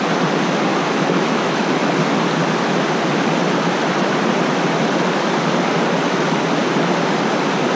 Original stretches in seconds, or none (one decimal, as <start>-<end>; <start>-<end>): 0.0-0.7; 1.7-7.8